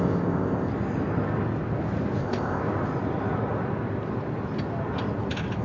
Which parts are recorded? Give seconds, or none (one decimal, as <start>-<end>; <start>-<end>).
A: 0.7-2.2; 2.6-5.6